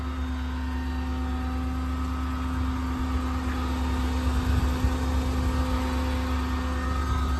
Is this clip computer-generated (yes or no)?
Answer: no